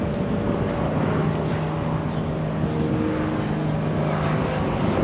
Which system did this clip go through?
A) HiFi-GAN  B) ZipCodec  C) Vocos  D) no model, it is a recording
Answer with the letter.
D